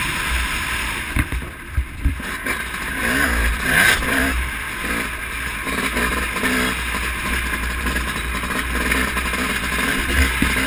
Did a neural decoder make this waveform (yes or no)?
no